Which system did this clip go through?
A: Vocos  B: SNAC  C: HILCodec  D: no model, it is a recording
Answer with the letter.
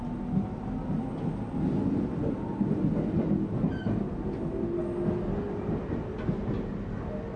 D